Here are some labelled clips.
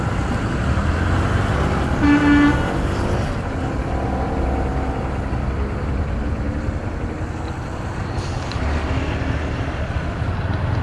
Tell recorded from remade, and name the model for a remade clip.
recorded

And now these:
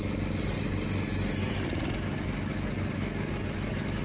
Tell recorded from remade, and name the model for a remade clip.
recorded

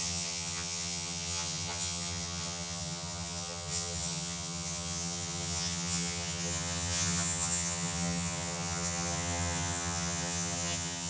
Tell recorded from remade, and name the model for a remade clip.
remade, vocoder, HiFi-GAN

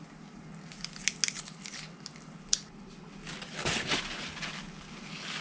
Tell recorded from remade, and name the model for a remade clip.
recorded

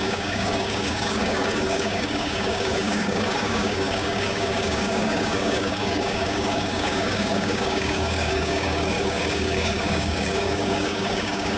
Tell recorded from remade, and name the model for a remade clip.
remade, codec, DAC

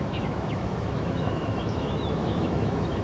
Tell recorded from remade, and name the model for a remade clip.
remade, autoencoder, DAC-VAE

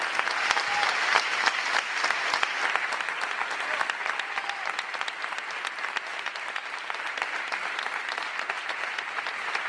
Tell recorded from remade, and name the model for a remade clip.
recorded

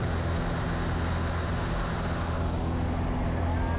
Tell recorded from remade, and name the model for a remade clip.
recorded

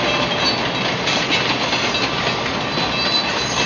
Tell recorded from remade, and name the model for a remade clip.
recorded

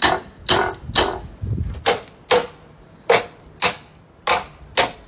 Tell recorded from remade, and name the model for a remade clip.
recorded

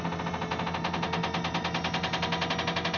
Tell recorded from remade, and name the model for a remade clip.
recorded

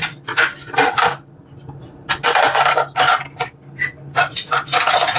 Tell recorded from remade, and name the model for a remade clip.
recorded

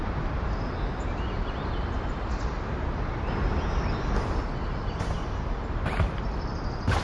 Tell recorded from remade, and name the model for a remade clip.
recorded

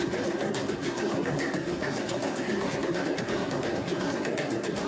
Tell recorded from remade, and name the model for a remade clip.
remade, codec, SNAC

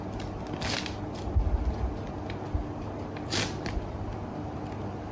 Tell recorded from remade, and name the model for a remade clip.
recorded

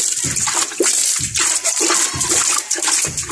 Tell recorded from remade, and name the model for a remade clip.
recorded